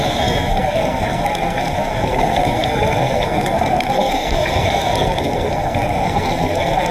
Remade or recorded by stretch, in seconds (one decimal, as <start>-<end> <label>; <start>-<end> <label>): 0.0-6.9 remade